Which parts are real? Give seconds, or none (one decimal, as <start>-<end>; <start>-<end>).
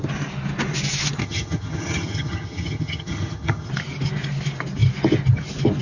0.0-1.2; 3.7-5.8